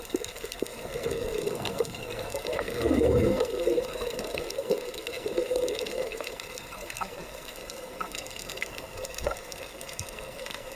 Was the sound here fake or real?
fake